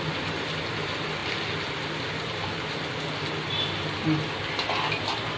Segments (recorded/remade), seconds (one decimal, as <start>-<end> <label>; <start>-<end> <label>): 0.0-5.4 recorded